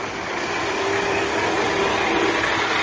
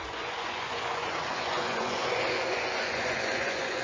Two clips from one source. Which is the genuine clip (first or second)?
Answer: first